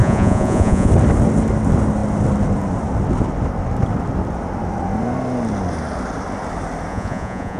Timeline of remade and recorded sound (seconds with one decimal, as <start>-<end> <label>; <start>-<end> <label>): 0.0-0.9 remade; 0.9-6.9 recorded; 6.9-7.6 remade